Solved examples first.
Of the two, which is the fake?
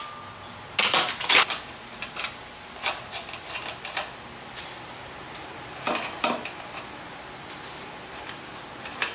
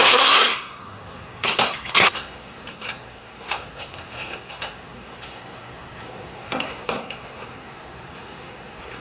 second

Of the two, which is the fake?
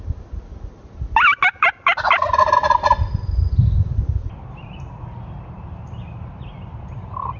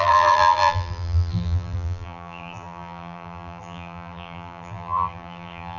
second